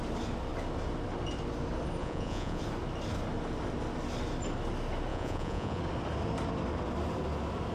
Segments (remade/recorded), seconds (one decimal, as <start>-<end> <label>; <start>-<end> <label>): 0.0-2.0 recorded; 2.0-2.6 remade; 2.6-5.1 recorded; 5.1-5.8 remade; 5.8-7.7 recorded